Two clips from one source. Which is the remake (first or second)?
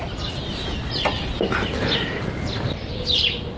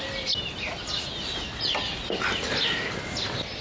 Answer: first